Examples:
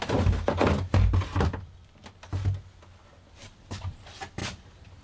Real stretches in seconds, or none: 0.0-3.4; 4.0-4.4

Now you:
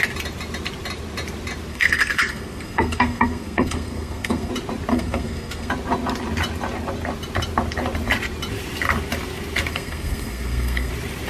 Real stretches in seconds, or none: 0.0-1.7; 4.5-4.9; 5.7-9.7; 10.9-11.3

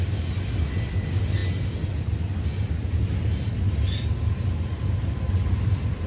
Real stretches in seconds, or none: 0.0-6.1

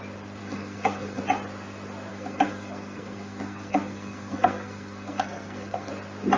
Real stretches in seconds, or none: 0.0-0.4; 1.2-2.1; 5.9-6.4

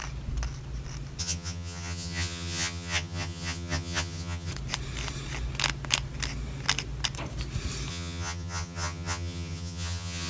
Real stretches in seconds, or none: 0.0-1.2; 4.5-7.9

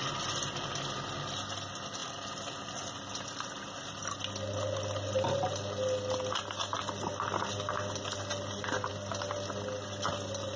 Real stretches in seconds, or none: 0.0-10.6

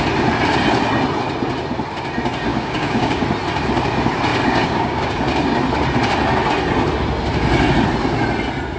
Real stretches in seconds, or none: 0.0-2.5; 3.2-4.3; 5.2-8.8

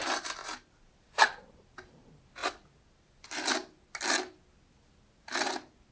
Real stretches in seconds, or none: 0.0-5.9